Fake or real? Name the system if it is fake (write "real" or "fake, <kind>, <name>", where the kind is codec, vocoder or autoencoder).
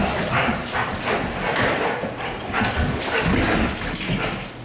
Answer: real